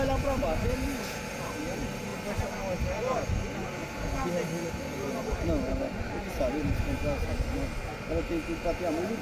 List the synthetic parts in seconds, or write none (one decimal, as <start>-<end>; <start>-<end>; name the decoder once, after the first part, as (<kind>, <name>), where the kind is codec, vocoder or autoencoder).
none